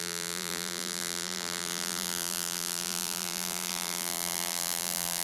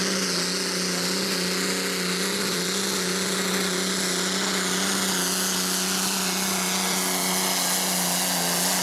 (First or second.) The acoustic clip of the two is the second